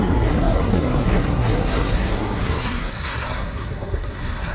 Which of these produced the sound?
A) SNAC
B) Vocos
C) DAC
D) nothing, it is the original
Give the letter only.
A